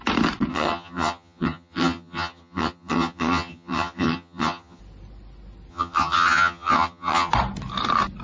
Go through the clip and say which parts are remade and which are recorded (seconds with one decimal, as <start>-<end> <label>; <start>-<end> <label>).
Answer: 0.0-0.5 recorded; 0.5-4.8 remade; 4.8-5.7 recorded; 5.7-7.3 remade; 7.3-8.2 recorded